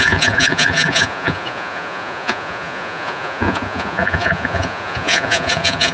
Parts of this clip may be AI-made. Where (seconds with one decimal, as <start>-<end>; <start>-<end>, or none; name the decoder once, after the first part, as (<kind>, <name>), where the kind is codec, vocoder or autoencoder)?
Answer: 0.0-5.9 (vocoder, Vocos)